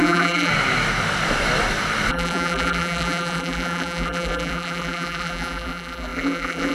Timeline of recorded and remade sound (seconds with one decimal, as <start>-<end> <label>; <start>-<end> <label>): 0.0-0.5 remade; 0.5-2.1 recorded; 2.1-6.7 remade